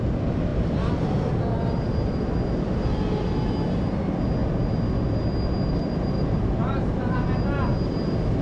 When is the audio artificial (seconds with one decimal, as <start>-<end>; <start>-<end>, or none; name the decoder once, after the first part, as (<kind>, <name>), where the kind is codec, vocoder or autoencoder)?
0.5-1.3 (vocoder, BigVGAN v2)